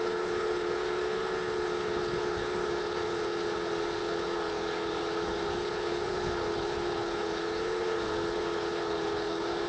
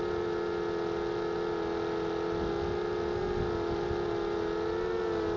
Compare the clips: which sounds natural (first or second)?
second